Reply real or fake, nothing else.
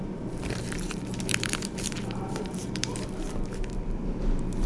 fake